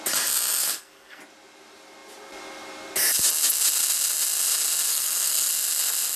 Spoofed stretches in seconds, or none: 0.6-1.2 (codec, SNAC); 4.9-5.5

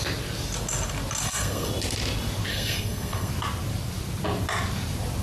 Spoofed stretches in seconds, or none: 1.2-1.7 (codec, SNAC); 2.5-3.3

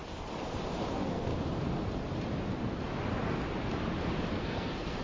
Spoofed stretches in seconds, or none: 0.9-1.3 (codec, SNAC); 4.3-5.0

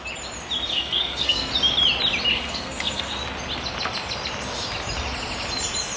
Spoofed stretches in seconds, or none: 0.7-1.5 (codec, SNAC); 2.3-3.2